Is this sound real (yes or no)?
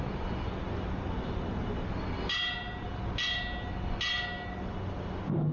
yes